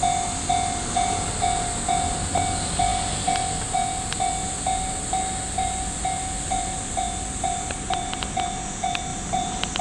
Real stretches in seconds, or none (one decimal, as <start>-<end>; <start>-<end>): 0.0-9.1